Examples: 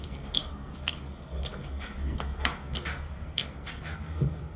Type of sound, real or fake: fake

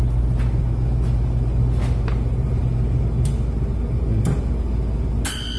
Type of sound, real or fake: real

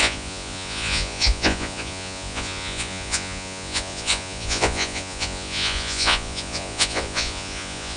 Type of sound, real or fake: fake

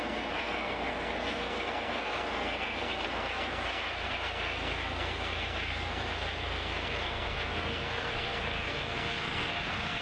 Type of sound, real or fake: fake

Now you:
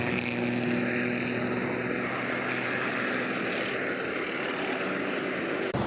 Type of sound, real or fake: real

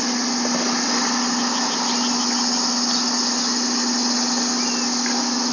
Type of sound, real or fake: real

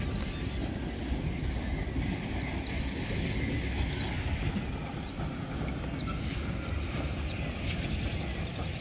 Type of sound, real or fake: real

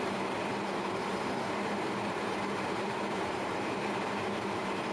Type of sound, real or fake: fake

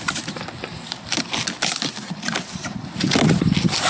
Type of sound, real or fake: real